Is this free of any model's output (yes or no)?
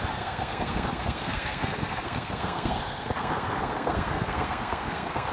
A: no